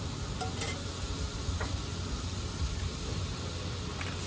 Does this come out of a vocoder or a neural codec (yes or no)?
no